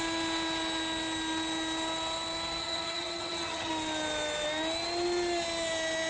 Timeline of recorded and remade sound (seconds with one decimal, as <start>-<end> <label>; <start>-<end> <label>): 0.0-2.6 recorded; 2.6-3.7 remade; 3.7-6.1 recorded